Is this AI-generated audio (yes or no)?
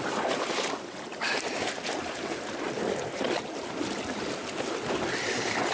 no